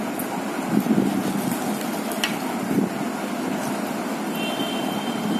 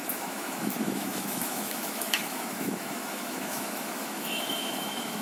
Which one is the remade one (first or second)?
second